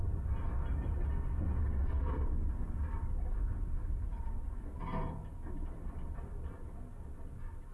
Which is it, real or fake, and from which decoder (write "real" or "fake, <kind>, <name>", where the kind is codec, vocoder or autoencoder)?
real